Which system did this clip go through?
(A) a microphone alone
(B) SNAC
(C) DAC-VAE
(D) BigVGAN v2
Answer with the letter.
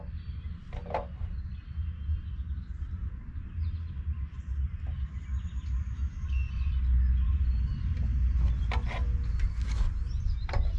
A